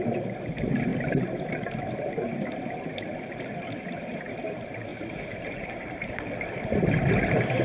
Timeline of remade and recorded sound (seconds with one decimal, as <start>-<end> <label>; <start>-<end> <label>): 0.0-4.9 recorded; 4.9-6.3 remade; 6.3-7.6 recorded

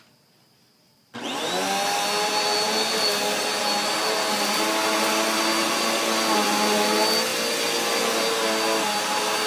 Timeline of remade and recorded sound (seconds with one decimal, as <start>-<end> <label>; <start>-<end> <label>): 0.0-9.5 recorded

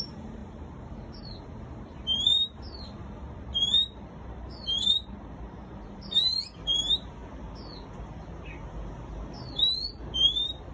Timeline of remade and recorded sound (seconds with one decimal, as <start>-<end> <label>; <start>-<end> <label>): 0.0-7.2 remade; 7.2-9.6 recorded; 9.6-10.7 remade

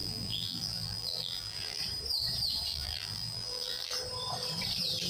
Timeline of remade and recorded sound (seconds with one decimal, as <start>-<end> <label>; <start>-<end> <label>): 0.0-1.8 remade; 1.8-2.7 recorded; 2.7-3.9 remade; 3.9-5.1 recorded

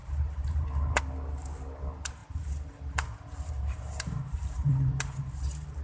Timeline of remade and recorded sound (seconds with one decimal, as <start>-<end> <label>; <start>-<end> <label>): 0.0-1.0 remade; 1.0-2.2 recorded; 2.2-5.8 remade

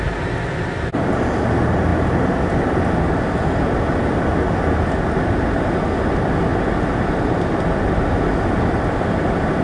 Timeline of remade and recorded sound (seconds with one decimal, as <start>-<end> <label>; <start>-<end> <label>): 0.0-9.6 recorded

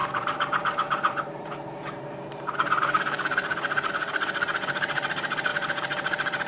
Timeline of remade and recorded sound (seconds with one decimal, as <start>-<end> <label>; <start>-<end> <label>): 0.0-3.9 remade; 3.9-5.5 recorded; 5.5-6.5 remade